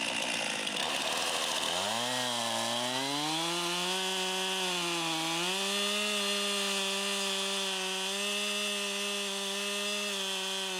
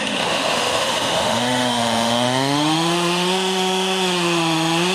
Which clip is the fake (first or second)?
second